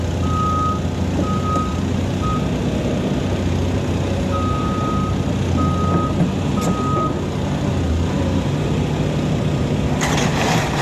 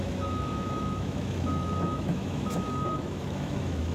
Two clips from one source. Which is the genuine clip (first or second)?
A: first